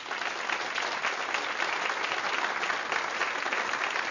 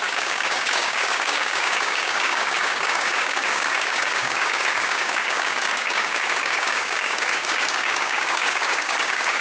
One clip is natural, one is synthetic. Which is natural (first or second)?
first